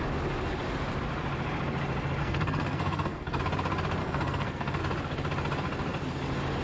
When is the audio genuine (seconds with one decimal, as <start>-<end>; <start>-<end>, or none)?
0.0-2.2; 3.4-4.0; 4.8-6.6